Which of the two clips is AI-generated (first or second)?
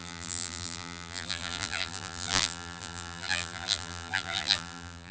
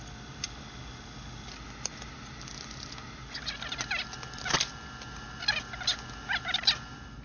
first